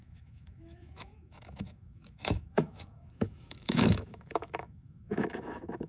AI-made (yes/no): yes